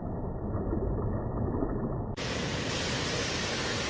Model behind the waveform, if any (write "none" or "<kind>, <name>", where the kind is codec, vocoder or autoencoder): none